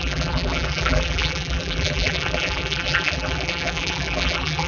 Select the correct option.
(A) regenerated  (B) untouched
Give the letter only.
A